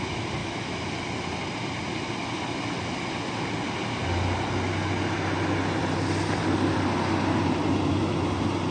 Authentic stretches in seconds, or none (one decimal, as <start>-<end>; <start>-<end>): 0.0-0.4; 0.9-8.7